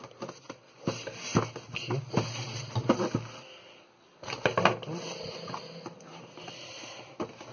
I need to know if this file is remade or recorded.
recorded